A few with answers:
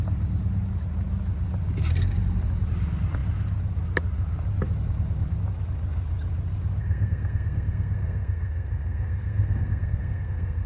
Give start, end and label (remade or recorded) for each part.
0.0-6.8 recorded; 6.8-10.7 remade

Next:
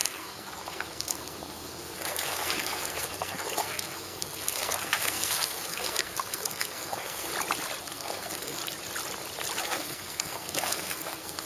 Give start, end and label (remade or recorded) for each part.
0.0-7.3 remade; 7.3-7.8 recorded; 7.8-8.6 remade; 8.6-9.6 recorded; 9.6-11.5 remade